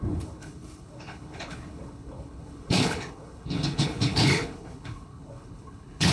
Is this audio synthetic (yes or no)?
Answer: yes